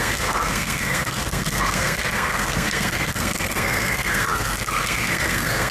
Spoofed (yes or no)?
yes